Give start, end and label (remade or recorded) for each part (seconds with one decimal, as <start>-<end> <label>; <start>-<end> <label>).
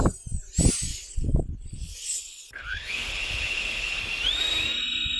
0.0-0.9 recorded; 0.9-4.0 remade; 4.0-5.2 recorded